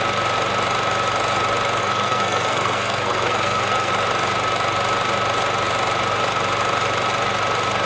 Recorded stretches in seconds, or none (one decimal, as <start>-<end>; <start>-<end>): 0.0-1.8; 3.9-7.8